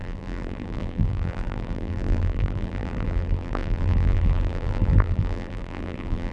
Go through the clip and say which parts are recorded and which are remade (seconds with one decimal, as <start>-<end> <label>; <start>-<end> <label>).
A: 0.0-6.3 remade